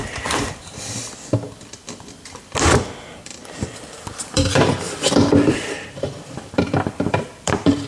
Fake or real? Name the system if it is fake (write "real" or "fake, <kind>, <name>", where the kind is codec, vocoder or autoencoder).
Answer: fake, vocoder, BigVGAN v2